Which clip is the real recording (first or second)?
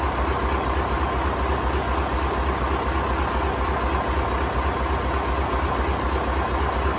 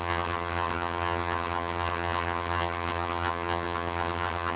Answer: first